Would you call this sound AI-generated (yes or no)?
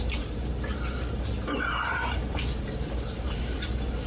yes